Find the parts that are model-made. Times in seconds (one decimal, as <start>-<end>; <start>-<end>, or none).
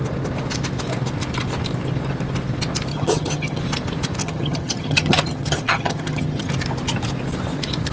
2.9-3.6; 4.2-6.5